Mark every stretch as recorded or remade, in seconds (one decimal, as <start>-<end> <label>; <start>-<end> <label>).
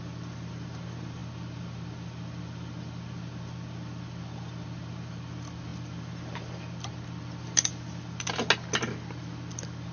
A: 0.0-9.9 recorded